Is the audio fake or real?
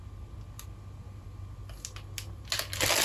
real